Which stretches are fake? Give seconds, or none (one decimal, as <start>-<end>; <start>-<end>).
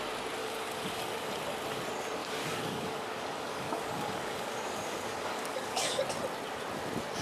0.4-1.3; 2.2-6.0